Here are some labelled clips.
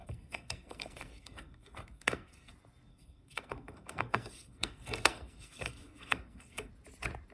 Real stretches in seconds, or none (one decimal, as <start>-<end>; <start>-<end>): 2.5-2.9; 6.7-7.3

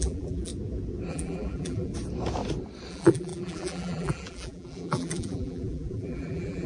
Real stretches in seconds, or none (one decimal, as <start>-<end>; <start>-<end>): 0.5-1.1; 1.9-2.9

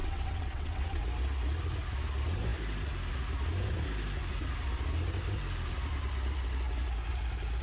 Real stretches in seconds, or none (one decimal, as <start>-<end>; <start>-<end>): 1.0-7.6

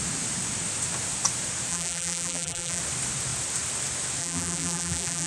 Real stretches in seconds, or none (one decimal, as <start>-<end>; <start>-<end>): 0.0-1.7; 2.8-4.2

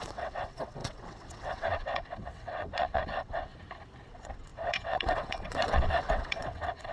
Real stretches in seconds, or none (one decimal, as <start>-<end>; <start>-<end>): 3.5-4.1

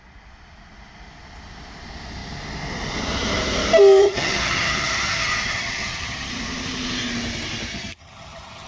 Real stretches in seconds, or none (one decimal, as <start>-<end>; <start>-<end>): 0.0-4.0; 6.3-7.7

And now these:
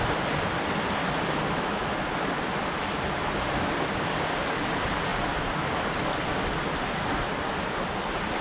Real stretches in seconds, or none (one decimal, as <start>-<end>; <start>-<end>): 0.0-8.4